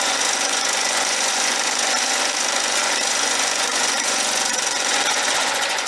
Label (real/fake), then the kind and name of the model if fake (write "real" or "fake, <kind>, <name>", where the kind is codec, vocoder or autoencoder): fake, vocoder, Vocos